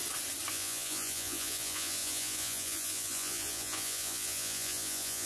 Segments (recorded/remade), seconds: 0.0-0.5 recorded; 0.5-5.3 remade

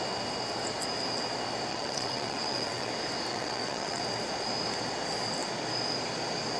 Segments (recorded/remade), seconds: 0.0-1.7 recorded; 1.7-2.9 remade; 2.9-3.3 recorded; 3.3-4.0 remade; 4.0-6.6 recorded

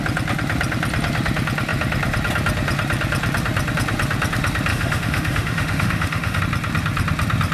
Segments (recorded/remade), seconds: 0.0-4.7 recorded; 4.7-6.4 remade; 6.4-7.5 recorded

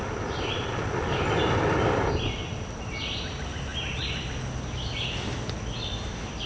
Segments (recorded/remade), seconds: 0.0-6.5 recorded

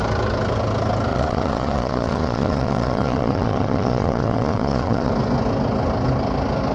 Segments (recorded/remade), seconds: 0.0-1.1 recorded; 1.1-5.1 remade; 5.1-6.7 recorded

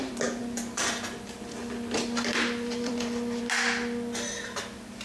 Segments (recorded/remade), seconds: 0.0-0.4 recorded; 0.4-3.4 remade; 3.4-5.0 recorded

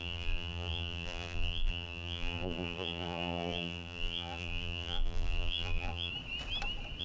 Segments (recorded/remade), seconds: 0.0-6.1 remade; 6.1-7.0 recorded